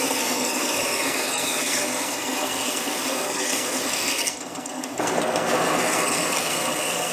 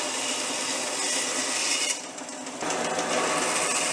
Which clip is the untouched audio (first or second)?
second